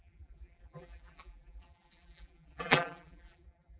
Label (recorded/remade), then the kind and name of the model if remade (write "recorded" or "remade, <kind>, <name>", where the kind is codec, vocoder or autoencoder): remade, vocoder, BigVGAN v2